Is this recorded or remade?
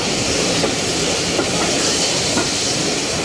remade